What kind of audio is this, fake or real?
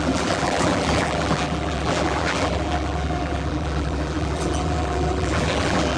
fake